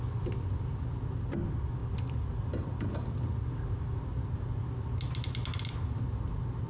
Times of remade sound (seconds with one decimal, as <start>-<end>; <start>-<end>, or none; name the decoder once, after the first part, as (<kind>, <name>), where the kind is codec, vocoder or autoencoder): none